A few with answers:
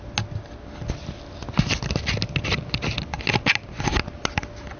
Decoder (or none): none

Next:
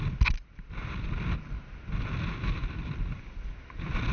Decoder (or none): none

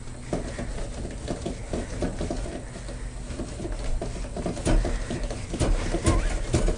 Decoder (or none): none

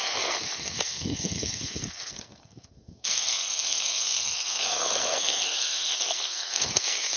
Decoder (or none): codec, SNAC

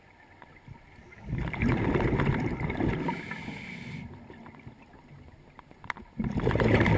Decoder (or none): none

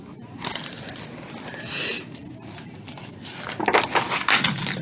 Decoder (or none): none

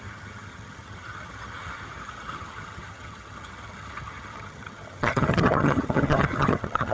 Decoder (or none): vocoder, HiFi-GAN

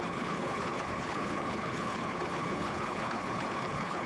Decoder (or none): codec, HILCodec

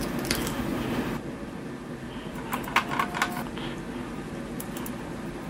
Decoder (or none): none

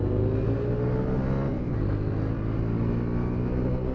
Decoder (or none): none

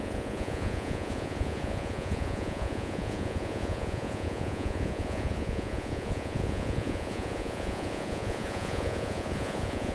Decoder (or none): vocoder, Vocos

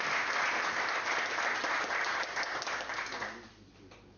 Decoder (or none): none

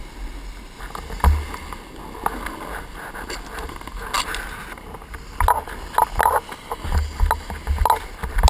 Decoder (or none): none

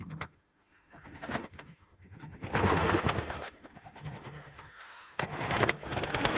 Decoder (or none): autoencoder, DAC-VAE